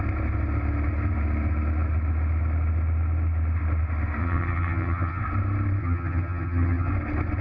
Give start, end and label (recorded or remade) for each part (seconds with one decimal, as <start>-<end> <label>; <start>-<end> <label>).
0.0-4.2 recorded; 4.2-5.2 remade; 5.2-5.8 recorded; 5.8-6.9 remade; 6.9-7.4 recorded